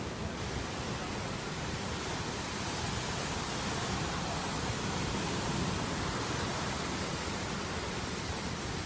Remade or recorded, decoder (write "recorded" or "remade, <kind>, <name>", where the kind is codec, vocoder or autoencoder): recorded